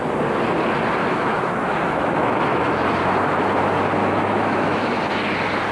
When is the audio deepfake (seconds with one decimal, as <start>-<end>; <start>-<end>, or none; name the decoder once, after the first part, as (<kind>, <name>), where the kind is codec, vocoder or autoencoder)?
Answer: 1.0-2.9 (autoencoder, DAC-VAE); 4.0-5.2